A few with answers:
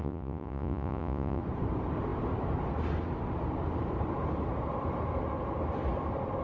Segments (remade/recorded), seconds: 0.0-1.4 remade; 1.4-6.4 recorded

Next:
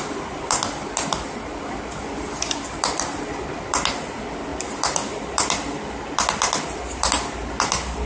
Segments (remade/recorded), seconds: 0.0-8.1 remade

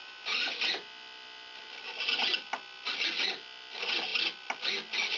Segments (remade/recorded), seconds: 0.0-5.2 recorded